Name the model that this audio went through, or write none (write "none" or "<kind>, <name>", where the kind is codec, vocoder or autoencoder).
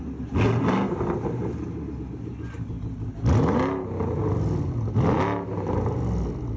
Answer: none